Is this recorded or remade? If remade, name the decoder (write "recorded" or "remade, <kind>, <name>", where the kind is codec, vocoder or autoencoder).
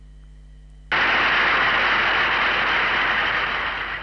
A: recorded